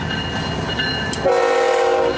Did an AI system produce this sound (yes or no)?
no